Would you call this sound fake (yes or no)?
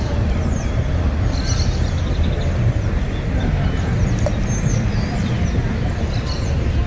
no